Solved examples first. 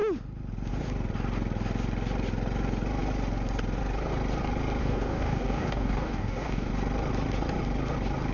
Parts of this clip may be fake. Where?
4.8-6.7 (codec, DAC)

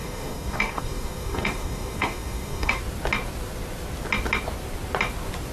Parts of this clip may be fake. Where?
0.0-2.8 (codec, DAC)

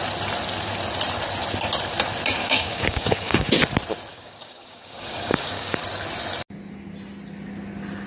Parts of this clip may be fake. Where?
2.4-3.5 (codec, DAC); 4.1-5.8

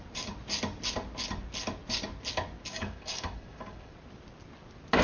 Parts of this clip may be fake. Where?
2.7-3.9 (codec, DAC)